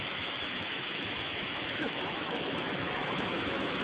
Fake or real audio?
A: fake